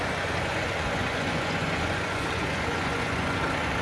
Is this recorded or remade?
remade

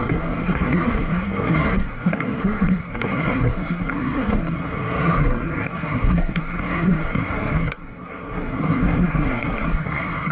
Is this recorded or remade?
remade